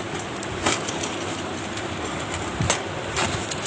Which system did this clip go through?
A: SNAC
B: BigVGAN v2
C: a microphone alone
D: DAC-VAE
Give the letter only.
C